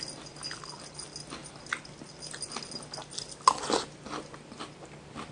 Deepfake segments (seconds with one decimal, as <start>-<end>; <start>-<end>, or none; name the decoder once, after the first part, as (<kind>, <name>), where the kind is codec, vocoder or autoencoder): none